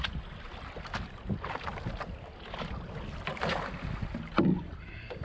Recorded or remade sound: recorded